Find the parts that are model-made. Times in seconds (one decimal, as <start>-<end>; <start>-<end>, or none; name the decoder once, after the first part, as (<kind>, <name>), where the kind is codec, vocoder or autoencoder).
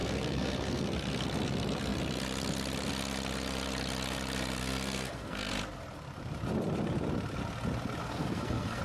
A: 0.0-0.8 (codec, SNAC); 4.6-5.5; 8.0-8.8